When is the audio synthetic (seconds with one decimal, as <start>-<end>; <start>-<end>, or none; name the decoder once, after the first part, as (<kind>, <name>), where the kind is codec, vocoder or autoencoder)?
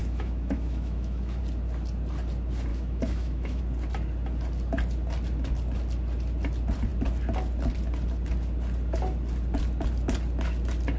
0.0-1.4 (autoencoder, DAC-VAE); 2.7-3.6